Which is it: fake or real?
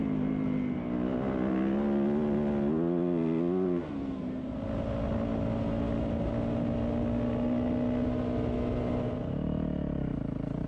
real